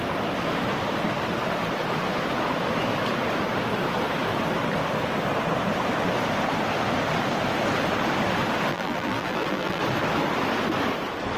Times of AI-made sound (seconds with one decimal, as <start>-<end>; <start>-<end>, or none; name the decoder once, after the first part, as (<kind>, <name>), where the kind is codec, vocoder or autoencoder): 8.7-9.8 (vocoder, BigVGAN v2)